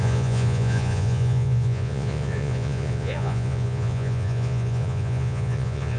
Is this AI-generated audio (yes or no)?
yes